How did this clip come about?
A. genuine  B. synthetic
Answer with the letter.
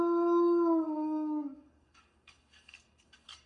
B